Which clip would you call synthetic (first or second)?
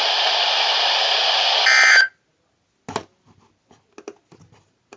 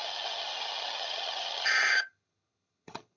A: second